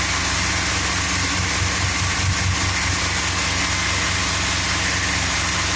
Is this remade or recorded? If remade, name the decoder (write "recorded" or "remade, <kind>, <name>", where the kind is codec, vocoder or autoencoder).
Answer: recorded